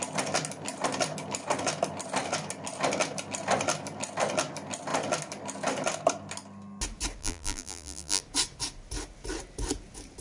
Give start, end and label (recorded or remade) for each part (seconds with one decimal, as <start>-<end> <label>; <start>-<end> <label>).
0.0-7.2 recorded; 7.2-8.2 remade; 8.2-10.2 recorded